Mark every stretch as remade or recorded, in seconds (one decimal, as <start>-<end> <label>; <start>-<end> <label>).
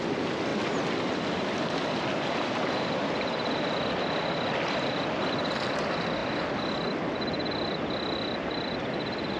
0.0-9.4 recorded